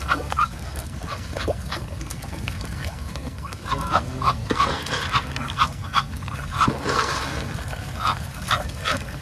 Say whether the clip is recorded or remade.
remade